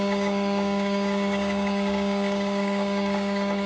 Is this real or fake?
fake